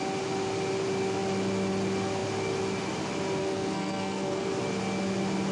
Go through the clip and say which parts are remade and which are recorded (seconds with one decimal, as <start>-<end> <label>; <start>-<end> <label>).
0.0-3.4 recorded; 3.4-4.5 remade; 4.5-5.5 recorded